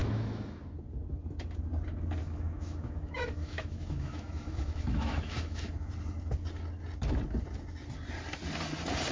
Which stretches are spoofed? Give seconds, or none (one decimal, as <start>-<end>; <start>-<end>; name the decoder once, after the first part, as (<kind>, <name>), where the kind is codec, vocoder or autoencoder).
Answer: 0.0-0.6 (autoencoder, DAC-VAE); 2.2-5.9